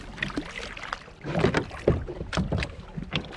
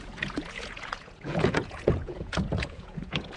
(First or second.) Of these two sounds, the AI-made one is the second